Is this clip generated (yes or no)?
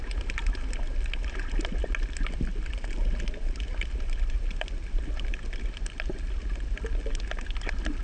no